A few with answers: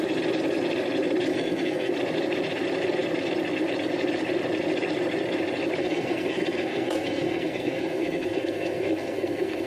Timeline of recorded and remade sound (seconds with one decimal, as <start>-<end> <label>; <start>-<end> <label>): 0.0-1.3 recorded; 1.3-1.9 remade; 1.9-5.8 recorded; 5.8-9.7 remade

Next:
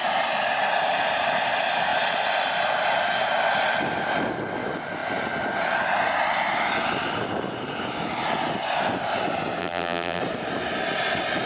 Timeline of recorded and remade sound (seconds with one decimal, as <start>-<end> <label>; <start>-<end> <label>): 0.0-9.6 recorded; 9.6-10.2 remade; 10.2-11.5 recorded

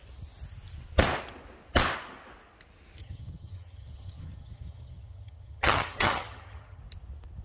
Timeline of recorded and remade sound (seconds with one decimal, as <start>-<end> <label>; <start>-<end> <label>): 0.0-3.0 recorded; 3.0-6.8 remade; 6.8-7.4 recorded